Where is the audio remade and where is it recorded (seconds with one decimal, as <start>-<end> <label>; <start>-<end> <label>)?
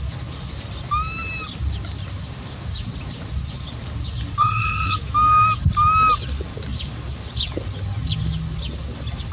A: 0.0-4.4 recorded; 4.4-5.0 remade; 5.0-9.3 recorded